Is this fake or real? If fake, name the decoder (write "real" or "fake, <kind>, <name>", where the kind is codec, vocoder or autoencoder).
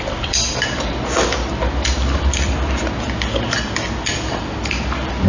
fake, vocoder, BigVGAN v2